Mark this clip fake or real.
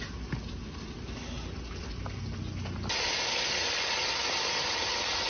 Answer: real